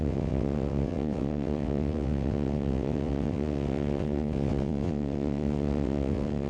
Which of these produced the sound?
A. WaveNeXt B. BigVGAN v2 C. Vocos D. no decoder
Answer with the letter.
A